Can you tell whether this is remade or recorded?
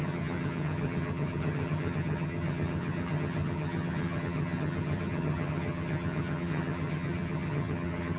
remade